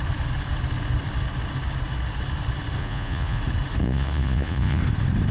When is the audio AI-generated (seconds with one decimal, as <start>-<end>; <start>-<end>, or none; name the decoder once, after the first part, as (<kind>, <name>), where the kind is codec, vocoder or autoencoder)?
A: 2.8-3.4 (vocoder, Vocos); 3.8-4.8